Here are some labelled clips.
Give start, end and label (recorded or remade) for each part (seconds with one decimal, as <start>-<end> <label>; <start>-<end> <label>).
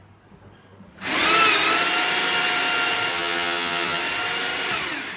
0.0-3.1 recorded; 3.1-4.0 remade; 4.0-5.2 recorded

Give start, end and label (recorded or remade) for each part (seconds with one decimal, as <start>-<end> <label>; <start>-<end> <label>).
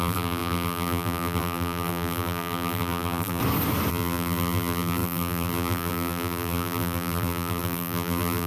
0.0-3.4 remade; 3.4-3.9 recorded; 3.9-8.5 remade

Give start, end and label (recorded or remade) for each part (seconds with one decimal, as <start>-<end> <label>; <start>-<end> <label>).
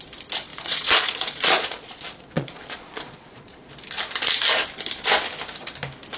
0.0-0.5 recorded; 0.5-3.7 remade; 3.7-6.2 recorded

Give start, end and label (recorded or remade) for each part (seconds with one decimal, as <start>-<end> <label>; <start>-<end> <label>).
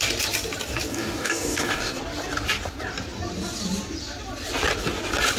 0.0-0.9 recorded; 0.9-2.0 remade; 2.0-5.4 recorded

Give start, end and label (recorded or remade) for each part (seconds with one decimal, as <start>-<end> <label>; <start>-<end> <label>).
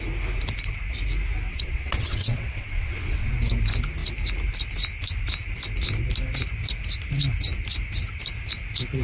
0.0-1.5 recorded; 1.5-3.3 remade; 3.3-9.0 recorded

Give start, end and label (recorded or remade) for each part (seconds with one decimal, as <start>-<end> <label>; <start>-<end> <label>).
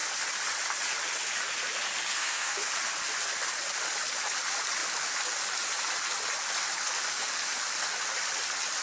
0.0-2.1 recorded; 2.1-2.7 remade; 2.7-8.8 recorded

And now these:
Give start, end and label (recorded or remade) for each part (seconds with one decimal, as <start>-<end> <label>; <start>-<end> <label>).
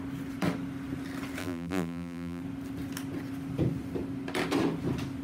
0.0-1.4 recorded; 1.4-2.4 remade; 2.4-5.2 recorded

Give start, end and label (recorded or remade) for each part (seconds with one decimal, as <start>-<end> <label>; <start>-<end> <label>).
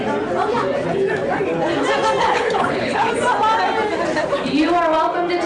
0.0-2.2 recorded; 2.2-3.1 remade; 3.1-5.5 recorded